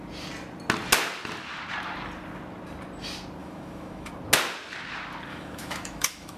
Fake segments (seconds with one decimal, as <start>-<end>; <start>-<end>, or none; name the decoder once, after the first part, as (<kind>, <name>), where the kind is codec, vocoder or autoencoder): 3.4-4.1 (autoencoder, DAC-VAE); 5.3-6.4